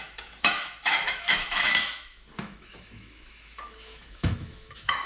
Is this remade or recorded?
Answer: remade